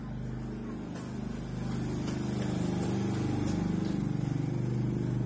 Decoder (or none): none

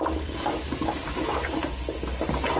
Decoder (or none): none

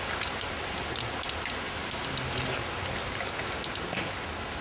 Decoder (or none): none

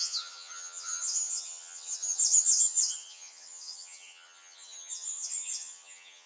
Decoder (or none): vocoder, HiFi-GAN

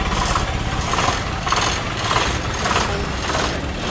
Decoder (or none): none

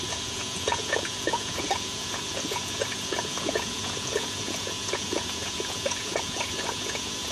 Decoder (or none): vocoder, Vocos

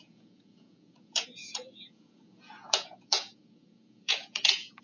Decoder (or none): vocoder, Vocos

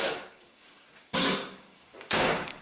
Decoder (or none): codec, DAC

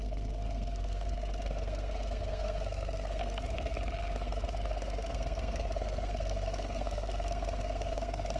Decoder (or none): codec, SNAC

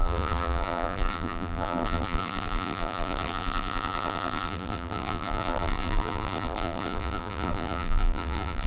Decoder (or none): vocoder, BigVGAN v2